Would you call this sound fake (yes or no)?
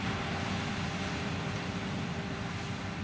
yes